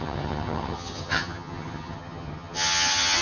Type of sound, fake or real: fake